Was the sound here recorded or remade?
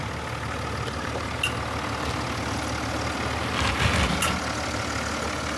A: recorded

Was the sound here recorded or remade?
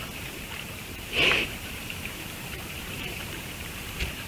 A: remade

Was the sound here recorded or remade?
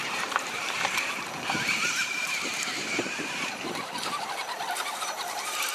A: remade